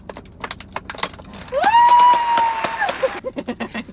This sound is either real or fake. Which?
real